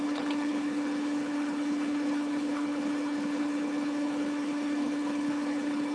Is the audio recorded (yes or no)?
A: no